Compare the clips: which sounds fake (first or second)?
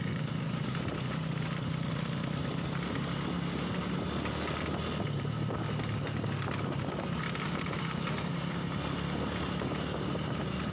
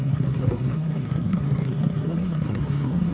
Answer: second